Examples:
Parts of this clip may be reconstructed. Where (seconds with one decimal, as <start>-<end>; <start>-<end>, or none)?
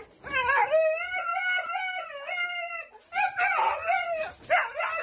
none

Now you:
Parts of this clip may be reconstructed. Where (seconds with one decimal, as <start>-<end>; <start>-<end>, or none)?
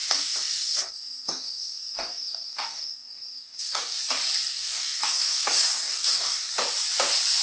0.0-4.0; 4.5-6.5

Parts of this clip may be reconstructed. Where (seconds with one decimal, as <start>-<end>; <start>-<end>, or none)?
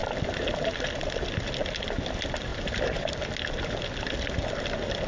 2.5-3.1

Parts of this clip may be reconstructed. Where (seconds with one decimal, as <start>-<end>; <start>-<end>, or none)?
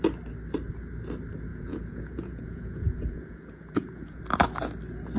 1.5-4.2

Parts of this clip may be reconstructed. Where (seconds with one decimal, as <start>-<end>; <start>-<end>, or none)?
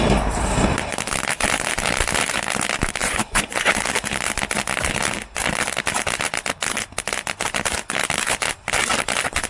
3.0-3.7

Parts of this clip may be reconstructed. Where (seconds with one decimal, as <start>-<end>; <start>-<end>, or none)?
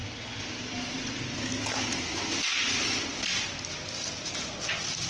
none